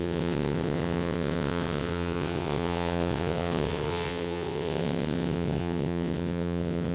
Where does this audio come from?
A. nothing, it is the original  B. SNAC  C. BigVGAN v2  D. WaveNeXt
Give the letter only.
D